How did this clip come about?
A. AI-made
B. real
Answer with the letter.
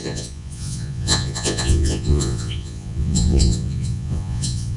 A